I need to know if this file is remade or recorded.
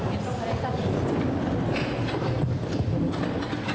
recorded